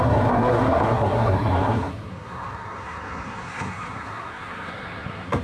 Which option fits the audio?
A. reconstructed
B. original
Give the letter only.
A